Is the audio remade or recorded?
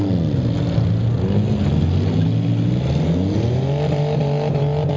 recorded